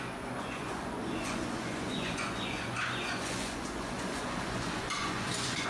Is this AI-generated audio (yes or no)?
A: yes